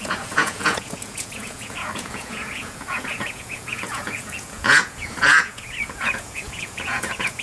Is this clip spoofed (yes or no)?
yes